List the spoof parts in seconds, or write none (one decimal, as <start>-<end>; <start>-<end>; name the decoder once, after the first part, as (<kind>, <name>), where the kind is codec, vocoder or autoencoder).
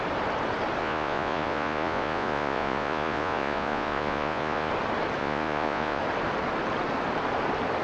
0.8-4.7 (vocoder, Vocos); 5.2-6.0